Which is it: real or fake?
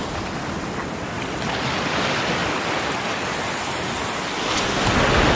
real